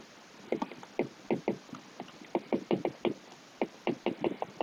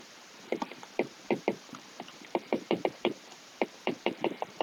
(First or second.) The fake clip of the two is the second